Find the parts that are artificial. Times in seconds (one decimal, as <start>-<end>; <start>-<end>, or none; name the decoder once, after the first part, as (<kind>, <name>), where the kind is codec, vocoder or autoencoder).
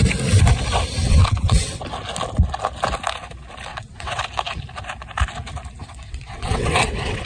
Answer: 1.0-1.8 (vocoder, WaveNeXt); 3.7-4.2; 5.8-7.3